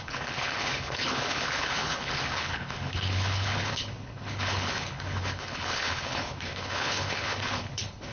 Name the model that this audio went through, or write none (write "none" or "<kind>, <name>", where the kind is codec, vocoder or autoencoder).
codec, HILCodec